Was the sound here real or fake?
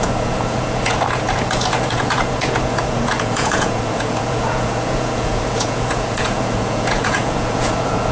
fake